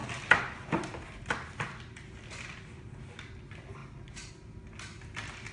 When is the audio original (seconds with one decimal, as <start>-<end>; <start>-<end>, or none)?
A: 0.0-5.5